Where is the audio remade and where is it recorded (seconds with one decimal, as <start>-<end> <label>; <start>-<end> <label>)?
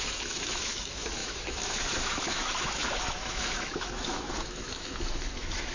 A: 0.0-5.7 remade